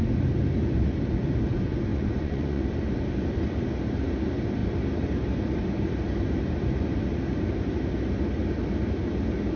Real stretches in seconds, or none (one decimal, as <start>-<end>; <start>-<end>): 0.0-1.9; 2.6-9.6